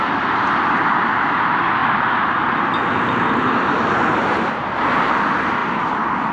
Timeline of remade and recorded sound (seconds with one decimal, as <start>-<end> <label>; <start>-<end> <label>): 0.0-6.3 recorded